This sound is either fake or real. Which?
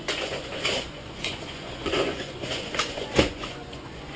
fake